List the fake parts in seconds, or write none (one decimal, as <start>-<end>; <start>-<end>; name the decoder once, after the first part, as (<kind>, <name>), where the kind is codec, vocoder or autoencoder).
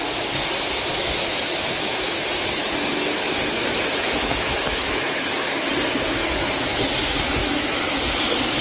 1.0-5.7 (autoencoder, DAC-VAE); 6.2-6.8; 7.4-8.0